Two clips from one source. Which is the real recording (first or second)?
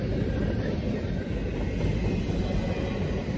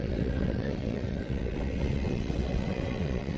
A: first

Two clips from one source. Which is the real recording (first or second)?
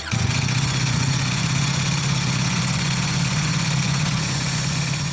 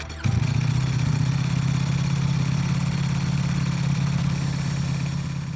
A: second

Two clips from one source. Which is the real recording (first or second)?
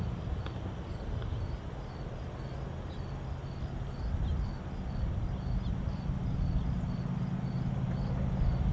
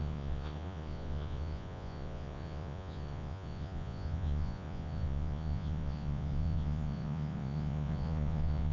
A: first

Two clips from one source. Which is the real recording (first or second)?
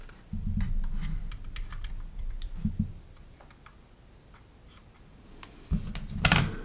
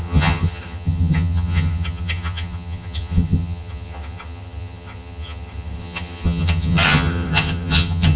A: first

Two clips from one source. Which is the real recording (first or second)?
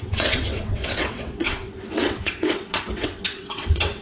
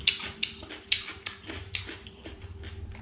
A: second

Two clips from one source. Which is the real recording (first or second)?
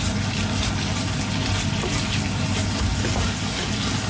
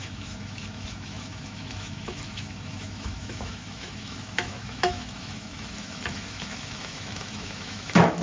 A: first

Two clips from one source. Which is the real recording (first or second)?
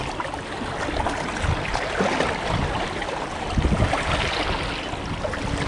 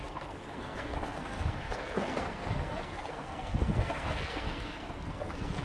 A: first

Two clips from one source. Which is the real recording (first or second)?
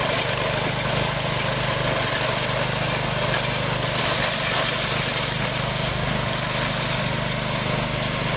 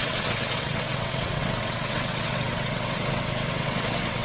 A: first